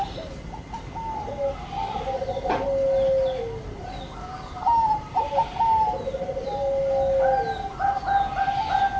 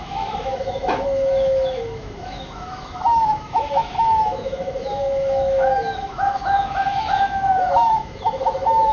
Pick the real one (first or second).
first